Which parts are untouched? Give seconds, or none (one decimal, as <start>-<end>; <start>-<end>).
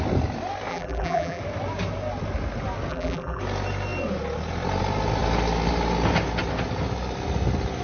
0.0-0.7; 1.4-2.9; 3.4-7.8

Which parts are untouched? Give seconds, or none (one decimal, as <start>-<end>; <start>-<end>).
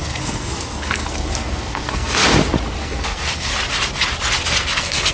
2.2-2.8; 3.5-4.6